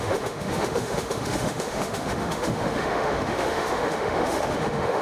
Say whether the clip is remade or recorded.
remade